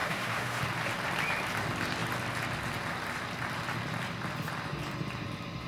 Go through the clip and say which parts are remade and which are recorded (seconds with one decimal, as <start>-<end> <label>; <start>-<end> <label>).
0.0-0.6 remade; 0.6-5.7 recorded

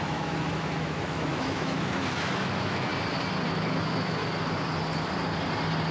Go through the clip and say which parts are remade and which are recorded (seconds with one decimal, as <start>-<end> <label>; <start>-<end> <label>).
0.0-2.9 remade; 2.9-3.5 recorded; 3.5-4.2 remade; 4.2-5.9 recorded

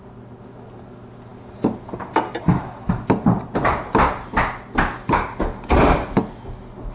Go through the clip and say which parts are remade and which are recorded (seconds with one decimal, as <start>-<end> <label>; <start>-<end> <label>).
0.0-6.9 recorded

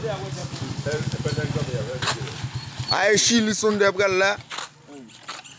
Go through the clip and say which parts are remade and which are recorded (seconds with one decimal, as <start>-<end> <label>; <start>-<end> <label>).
0.0-5.6 recorded

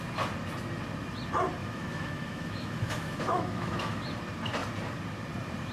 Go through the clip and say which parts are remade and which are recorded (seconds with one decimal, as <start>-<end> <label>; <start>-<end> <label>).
0.0-1.6 recorded; 1.6-4.0 remade; 4.0-5.7 recorded

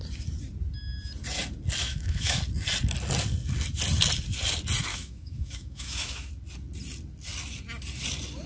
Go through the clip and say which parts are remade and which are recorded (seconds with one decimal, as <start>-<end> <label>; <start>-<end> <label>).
0.0-1.8 recorded; 1.8-2.4 remade; 2.4-4.9 recorded; 4.9-6.3 remade; 6.3-8.5 recorded

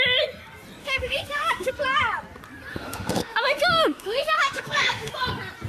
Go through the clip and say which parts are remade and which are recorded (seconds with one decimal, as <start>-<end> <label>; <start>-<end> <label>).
0.0-0.8 recorded; 0.8-1.7 remade; 1.7-2.7 recorded; 2.7-5.1 remade; 5.1-5.7 recorded

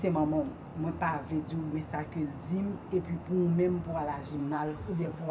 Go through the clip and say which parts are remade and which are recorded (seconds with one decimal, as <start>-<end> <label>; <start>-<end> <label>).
0.0-4.4 recorded; 4.4-5.3 remade